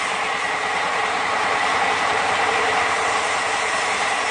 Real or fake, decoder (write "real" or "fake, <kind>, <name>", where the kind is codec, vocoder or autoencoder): fake, vocoder, BigVGAN v2